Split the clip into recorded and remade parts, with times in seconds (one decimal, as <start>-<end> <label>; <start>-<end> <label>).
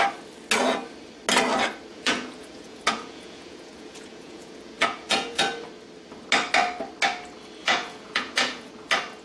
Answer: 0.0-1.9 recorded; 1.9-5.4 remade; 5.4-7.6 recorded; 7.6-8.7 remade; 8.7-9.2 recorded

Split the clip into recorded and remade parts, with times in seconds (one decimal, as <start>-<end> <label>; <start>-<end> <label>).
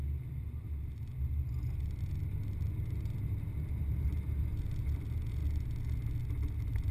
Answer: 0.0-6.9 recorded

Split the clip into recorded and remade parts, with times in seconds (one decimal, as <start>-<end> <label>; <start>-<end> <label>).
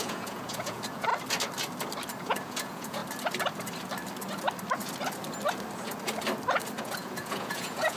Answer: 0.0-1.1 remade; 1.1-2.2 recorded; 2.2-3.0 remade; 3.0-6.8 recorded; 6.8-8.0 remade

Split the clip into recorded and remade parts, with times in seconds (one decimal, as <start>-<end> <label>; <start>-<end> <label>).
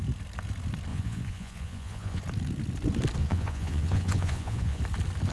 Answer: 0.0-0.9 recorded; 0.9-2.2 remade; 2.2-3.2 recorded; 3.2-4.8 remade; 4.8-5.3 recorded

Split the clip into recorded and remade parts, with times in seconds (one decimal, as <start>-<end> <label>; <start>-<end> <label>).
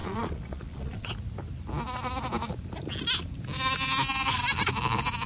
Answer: 0.0-1.1 remade; 1.1-5.3 recorded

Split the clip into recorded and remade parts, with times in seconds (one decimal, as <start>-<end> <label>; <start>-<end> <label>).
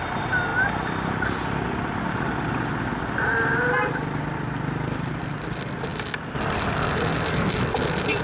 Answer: 0.0-8.2 recorded